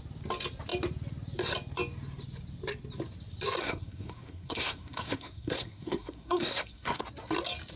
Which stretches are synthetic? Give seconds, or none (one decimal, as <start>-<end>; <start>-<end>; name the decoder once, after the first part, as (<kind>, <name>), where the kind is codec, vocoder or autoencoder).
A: 3.6-7.0 (codec, SNAC)